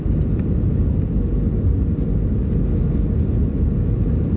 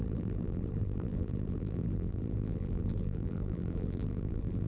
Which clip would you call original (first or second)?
first